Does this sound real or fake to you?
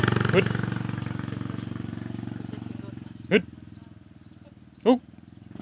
real